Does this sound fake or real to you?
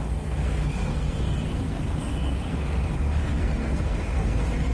fake